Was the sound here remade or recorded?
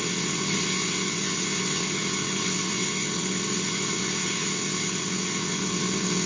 remade